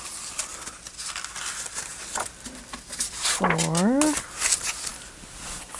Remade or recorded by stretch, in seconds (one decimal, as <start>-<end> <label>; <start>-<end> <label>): 0.0-5.8 recorded